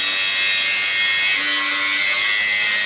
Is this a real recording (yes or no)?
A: yes